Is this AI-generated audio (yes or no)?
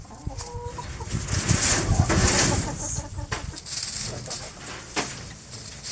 no